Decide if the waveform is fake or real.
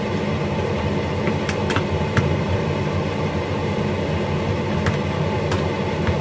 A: real